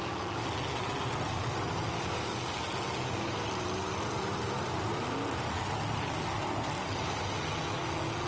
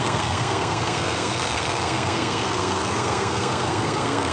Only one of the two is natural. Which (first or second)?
first